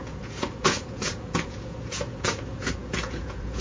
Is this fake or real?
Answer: fake